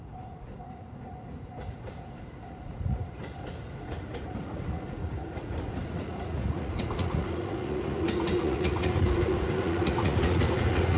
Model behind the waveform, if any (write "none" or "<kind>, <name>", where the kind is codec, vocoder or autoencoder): vocoder, Vocos